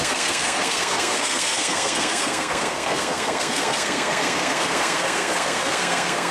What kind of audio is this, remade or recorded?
remade